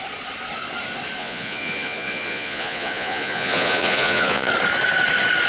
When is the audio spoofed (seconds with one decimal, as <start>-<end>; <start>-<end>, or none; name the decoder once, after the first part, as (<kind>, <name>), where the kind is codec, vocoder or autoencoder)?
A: 1.2-4.5 (vocoder, Vocos)